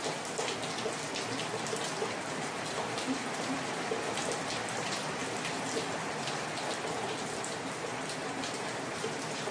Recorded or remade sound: recorded